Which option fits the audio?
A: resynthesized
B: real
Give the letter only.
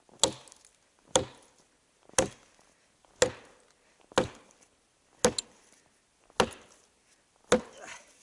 B